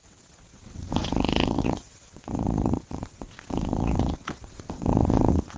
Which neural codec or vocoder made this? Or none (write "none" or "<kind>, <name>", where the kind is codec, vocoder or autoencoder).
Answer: vocoder, WaveNeXt